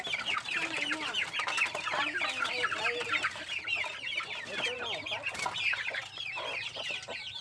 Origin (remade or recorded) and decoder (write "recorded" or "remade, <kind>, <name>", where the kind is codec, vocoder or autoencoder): recorded